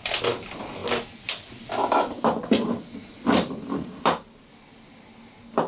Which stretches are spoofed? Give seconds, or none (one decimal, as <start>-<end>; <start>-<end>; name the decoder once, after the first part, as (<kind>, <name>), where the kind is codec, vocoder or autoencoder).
none